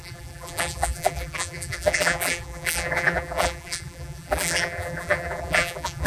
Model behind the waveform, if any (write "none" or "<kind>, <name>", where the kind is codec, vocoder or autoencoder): vocoder, BigVGAN v2